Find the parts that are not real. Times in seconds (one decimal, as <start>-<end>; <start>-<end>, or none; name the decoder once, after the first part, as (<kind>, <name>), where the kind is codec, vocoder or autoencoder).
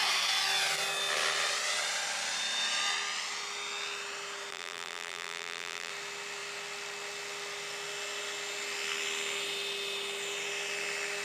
4.5-5.9 (vocoder, BigVGAN v2)